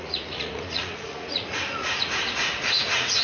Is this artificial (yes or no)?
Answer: yes